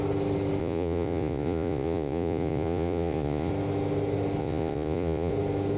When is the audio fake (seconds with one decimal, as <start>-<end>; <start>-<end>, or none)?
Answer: 0.6-3.5; 4.4-5.3